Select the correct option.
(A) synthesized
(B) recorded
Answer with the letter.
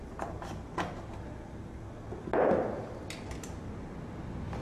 B